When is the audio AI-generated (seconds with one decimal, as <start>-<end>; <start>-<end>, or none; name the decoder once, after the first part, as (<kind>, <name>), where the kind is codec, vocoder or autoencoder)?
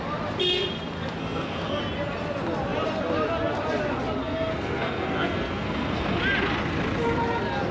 1.2-1.8 (codec, SNAC); 4.2-6.2